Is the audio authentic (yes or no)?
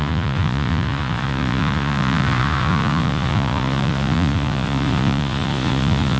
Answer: no